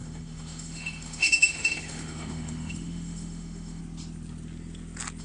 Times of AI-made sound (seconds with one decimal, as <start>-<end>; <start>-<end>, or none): 0.0-3.8